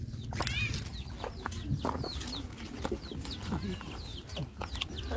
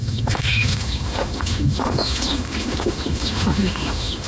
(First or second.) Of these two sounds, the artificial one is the second